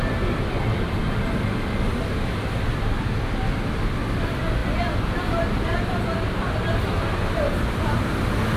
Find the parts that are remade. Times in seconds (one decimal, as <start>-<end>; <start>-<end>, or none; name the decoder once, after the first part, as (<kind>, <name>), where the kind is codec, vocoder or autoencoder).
none

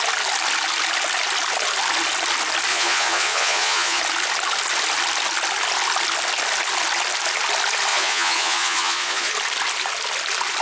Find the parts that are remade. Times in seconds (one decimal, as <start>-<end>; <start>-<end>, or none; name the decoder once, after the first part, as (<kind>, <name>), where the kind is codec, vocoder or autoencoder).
2.7-4.0 (vocoder, Vocos); 7.9-9.3

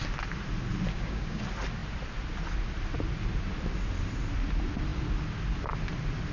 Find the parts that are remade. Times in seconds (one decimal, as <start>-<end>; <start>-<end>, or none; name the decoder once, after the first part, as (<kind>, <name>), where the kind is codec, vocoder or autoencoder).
0.9-1.4 (codec, DAC)

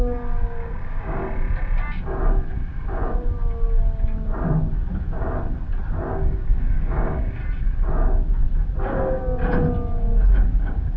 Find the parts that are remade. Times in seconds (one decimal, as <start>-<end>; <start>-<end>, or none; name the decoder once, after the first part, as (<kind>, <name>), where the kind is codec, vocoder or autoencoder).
0.0-1.2 (codec, DAC); 6.1-7.4; 10.6-11.0

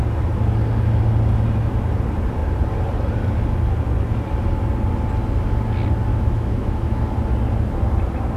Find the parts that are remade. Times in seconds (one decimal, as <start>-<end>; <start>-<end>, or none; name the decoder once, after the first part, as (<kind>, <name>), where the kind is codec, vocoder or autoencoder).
6.1-7.0 (autoencoder, DAC-VAE)

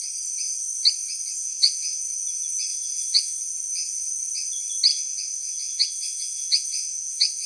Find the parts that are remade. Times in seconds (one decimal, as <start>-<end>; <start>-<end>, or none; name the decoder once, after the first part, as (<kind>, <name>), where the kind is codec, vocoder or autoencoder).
1.4-2.0 (vocoder, Vocos); 2.7-3.4; 4.9-7.5

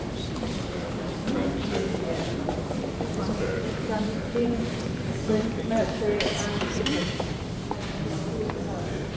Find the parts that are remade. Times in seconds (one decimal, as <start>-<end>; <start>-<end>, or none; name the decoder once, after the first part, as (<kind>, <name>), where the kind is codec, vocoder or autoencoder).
0.0-1.2 (vocoder, BigVGAN v2); 2.8-9.2

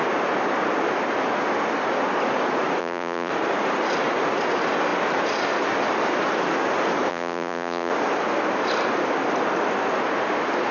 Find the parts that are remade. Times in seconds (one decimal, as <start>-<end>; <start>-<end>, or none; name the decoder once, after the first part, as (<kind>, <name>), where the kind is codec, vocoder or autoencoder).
2.8-3.3 (vocoder, Vocos); 7.1-7.9